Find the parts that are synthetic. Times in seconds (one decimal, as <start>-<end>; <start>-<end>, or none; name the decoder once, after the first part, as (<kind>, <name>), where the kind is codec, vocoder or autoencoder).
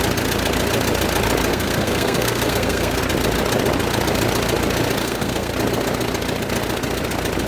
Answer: 1.5-3.0 (codec, SNAC); 5.0-5.5